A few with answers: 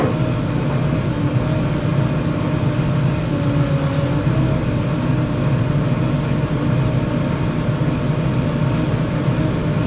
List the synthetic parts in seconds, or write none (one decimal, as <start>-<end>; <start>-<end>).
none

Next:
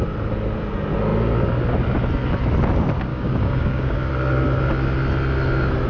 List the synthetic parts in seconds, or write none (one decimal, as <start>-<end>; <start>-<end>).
3.1-4.1

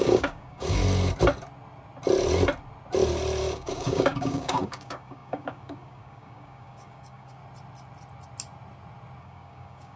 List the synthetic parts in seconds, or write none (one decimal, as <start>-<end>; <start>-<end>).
0.0-0.8; 3.4-7.4; 9.2-10.0

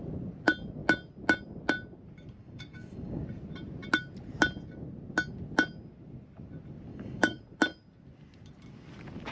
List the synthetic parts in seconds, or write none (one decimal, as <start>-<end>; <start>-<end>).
2.4-3.2; 6.9-7.4

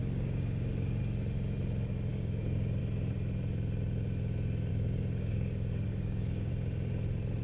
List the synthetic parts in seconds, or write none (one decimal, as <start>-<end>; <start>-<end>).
0.0-1.0; 2.1-2.8; 4.7-6.5